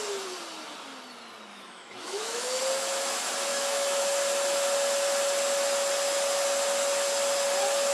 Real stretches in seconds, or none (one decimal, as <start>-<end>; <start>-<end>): 0.0-1.5; 2.6-3.5; 4.0-7.9